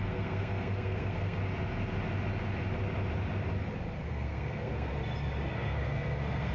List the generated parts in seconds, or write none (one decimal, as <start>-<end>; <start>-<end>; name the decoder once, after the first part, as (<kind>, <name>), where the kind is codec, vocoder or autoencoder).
0.0-1.4 (codec, SNAC); 4.1-4.9; 5.5-6.5